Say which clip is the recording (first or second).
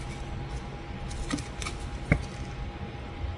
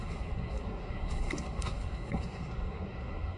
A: first